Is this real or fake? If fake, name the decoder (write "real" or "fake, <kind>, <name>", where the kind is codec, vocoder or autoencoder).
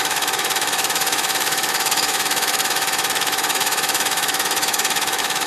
fake, autoencoder, DAC-VAE